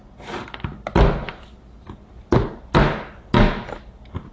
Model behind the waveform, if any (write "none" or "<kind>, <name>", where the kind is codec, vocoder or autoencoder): none